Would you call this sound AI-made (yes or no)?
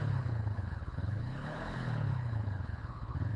yes